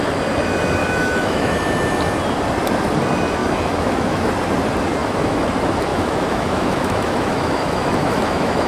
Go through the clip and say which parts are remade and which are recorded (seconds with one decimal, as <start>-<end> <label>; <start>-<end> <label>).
0.0-0.8 recorded; 0.8-1.5 remade; 1.5-3.4 recorded; 3.4-4.3 remade; 4.3-5.0 recorded; 5.0-5.5 remade; 5.5-5.9 recorded; 5.9-8.7 remade